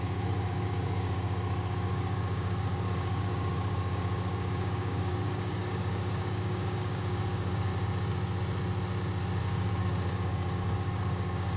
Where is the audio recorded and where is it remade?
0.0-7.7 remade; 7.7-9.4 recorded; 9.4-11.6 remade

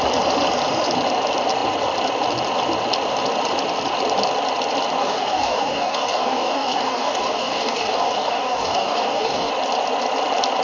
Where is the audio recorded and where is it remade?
0.0-5.0 recorded; 5.0-9.5 remade; 9.5-10.6 recorded

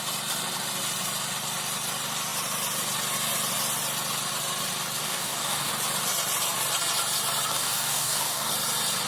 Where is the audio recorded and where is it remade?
0.0-5.0 recorded; 5.0-5.7 remade; 5.7-7.5 recorded; 7.5-8.5 remade; 8.5-9.1 recorded

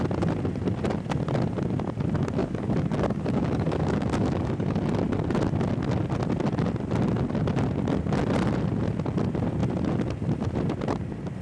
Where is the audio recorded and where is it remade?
0.0-2.4 recorded; 2.4-4.8 remade; 4.8-11.4 recorded